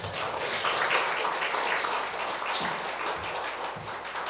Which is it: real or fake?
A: real